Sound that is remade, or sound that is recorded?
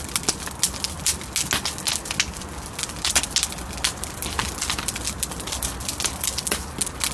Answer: recorded